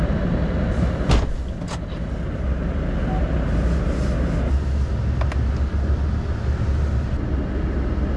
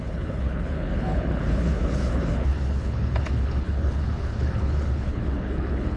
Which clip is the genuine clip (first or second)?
first